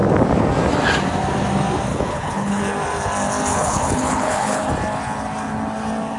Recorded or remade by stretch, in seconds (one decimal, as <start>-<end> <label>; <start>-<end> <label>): 0.0-1.9 recorded; 1.9-2.6 remade; 2.6-3.5 recorded; 3.5-4.7 remade; 4.7-6.2 recorded